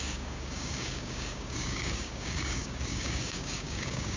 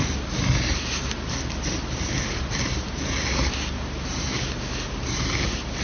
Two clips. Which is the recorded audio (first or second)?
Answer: second